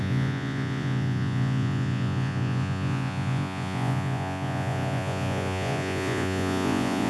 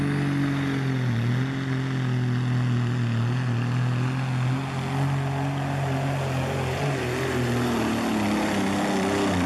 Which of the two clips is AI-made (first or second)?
first